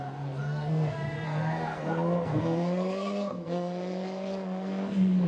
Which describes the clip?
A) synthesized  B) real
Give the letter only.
A